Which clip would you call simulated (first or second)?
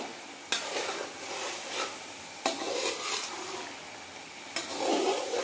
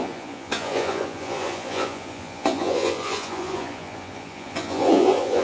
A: second